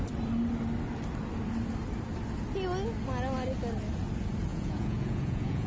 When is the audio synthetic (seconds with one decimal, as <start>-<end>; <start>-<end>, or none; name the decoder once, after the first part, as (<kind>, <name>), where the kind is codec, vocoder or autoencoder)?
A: 4.5-5.7 (vocoder, Vocos)

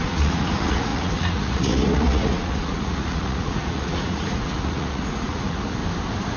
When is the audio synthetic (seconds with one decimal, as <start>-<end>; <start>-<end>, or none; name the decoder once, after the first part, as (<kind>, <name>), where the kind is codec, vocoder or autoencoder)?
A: 0.0-5.8 (vocoder, Vocos)